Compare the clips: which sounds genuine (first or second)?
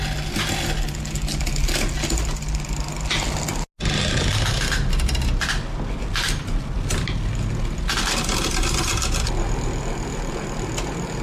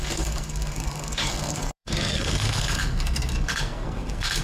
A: first